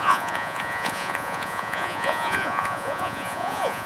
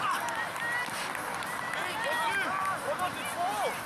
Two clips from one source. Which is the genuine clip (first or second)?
second